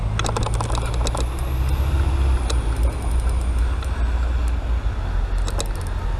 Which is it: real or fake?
real